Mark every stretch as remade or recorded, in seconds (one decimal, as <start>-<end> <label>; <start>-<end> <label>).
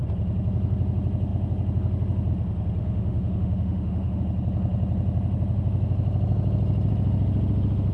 0.0-2.8 recorded; 2.8-4.2 remade; 4.2-7.9 recorded